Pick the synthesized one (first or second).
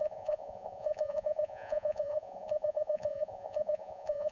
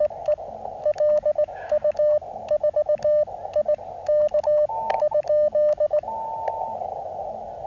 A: first